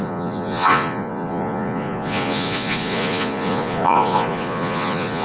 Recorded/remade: remade